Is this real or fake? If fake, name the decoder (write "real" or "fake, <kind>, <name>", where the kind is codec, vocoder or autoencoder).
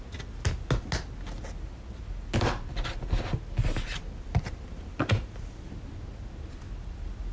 real